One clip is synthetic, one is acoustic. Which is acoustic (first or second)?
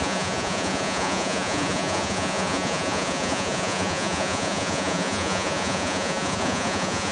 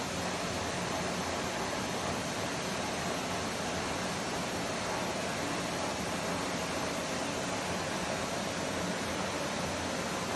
second